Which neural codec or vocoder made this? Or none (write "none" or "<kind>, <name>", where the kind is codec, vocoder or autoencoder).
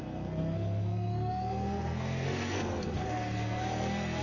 codec, SNAC